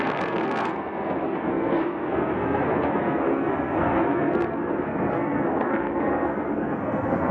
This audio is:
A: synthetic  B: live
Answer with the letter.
A